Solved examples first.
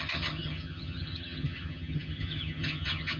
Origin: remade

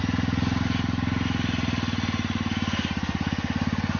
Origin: recorded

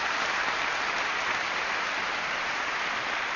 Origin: recorded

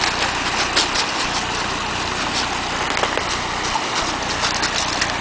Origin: recorded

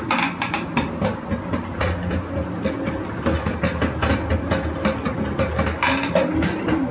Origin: recorded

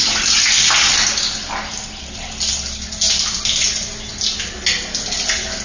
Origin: recorded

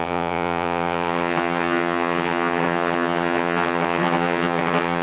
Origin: remade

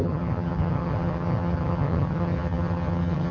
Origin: remade